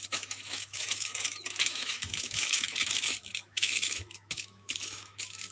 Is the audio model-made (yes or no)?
yes